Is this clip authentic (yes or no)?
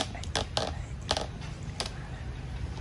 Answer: yes